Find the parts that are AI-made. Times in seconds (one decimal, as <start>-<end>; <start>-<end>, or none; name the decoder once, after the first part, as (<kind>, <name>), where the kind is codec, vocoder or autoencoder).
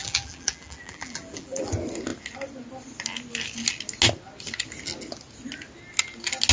0.0-1.7 (vocoder, BigVGAN v2)